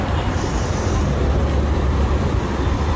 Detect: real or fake real